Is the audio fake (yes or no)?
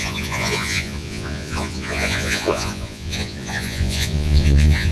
yes